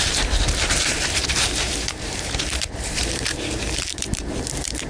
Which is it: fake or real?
fake